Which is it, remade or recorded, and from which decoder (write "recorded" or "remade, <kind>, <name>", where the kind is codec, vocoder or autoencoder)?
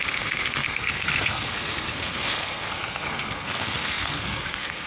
remade, codec, SNAC